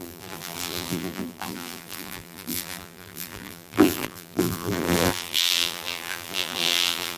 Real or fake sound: fake